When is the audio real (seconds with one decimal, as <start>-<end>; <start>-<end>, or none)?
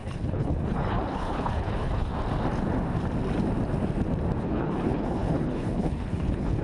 2.1-4.4